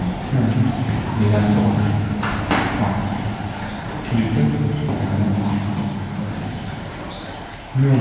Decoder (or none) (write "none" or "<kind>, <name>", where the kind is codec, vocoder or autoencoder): none